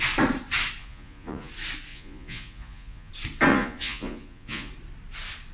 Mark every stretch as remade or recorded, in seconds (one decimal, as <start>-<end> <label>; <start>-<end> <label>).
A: 0.0-0.8 recorded; 0.8-1.5 remade; 1.5-1.9 recorded; 1.9-3.1 remade; 3.1-3.5 recorded; 3.5-4.7 remade; 4.7-5.5 recorded